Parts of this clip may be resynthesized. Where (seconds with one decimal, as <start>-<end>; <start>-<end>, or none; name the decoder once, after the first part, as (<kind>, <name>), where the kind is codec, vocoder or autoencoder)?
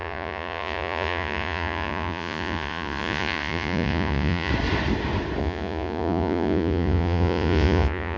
0.0-4.5 (vocoder, Vocos); 5.4-8.2